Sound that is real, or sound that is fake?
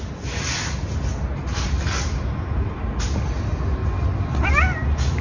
real